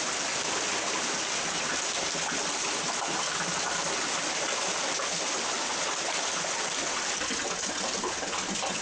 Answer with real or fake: real